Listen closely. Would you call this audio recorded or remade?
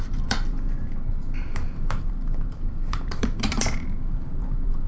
remade